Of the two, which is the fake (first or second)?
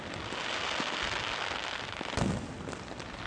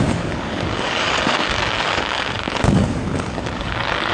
second